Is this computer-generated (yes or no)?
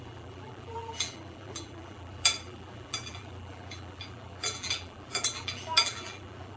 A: yes